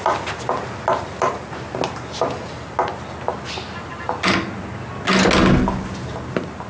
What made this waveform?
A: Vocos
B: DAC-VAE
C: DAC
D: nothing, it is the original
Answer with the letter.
D